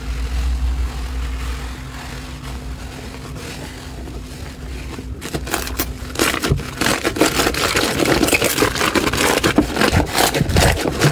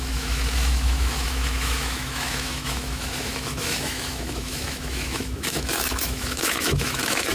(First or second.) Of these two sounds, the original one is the first